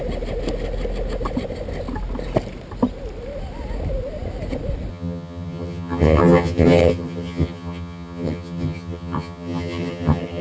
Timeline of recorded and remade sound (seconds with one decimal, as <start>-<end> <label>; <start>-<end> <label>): 0.0-4.9 recorded; 4.9-10.4 remade